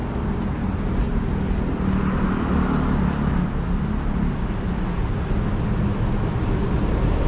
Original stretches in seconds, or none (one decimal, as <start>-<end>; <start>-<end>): 0.0-7.3